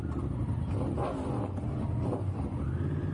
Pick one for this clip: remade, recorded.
recorded